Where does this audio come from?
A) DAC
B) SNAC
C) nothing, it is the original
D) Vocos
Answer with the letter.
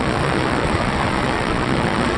D